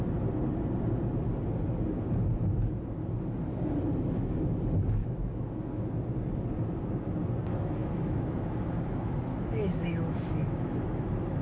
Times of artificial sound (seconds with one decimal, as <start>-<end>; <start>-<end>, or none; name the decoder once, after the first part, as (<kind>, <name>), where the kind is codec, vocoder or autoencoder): 5.0-5.6 (autoencoder, DAC-VAE); 7.8-8.7; 9.3-10.8